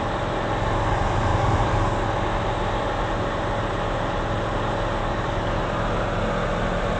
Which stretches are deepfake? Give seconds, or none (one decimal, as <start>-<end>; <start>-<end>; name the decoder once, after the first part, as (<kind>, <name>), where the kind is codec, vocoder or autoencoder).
1.3-2.1 (codec, DAC); 5.0-5.6

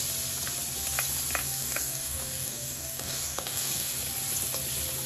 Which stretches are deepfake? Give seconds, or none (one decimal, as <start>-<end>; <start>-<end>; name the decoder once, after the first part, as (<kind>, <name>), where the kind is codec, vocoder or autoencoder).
1.4-3.9 (codec, DAC)

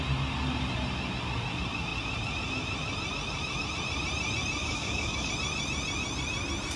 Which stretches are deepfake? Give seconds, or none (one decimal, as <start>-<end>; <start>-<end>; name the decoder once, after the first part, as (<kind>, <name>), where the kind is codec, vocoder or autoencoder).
4.6-5.3 (codec, DAC)